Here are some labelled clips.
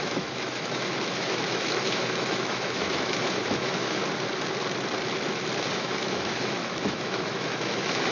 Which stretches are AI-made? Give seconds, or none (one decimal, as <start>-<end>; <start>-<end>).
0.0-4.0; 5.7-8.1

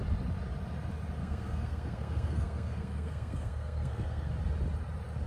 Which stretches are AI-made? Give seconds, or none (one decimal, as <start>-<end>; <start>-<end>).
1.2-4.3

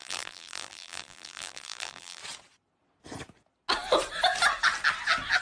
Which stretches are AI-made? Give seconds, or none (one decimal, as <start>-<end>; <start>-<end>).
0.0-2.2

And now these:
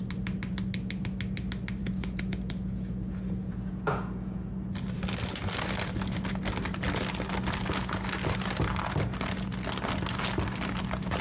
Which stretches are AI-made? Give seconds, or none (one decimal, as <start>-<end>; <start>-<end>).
1.8-4.5